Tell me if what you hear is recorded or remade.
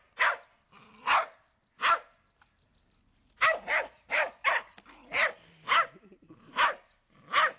recorded